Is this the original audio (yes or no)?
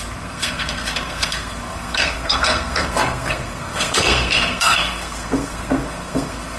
no